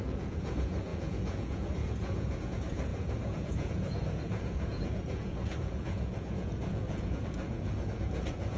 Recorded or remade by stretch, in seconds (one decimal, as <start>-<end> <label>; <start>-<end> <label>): 0.0-8.6 remade